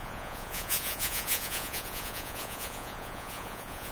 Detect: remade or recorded remade